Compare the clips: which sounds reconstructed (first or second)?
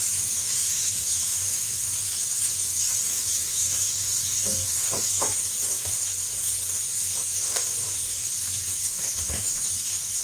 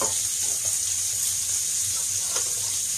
first